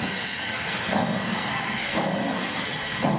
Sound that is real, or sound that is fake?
fake